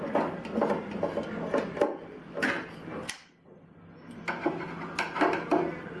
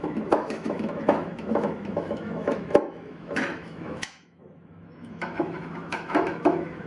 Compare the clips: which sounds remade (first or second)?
second